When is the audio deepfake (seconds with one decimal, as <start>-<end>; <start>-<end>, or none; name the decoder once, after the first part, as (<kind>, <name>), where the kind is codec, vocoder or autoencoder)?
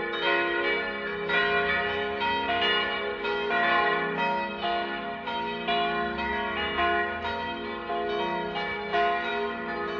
none